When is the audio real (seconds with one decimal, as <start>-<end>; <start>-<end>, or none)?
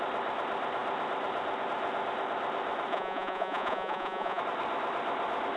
0.0-2.9; 4.4-5.6